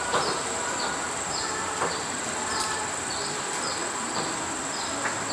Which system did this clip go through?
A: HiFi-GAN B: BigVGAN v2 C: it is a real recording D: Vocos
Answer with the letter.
B